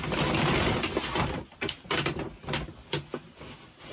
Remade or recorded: recorded